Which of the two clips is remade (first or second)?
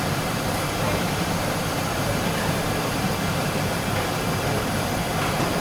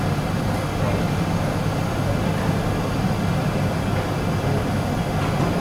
first